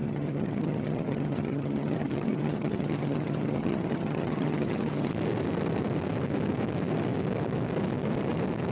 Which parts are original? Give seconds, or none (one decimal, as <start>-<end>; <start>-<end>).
5.1-8.7